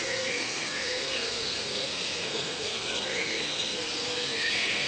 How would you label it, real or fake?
fake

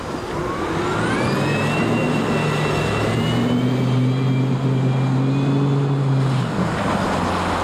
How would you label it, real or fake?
real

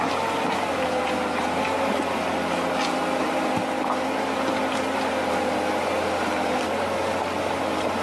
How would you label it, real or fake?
real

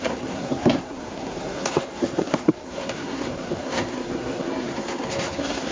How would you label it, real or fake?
fake